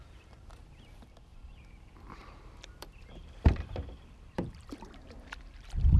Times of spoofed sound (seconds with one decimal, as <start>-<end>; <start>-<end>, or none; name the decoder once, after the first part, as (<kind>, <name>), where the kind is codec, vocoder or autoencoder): 0.0-6.0 (vocoder, BigVGAN v2)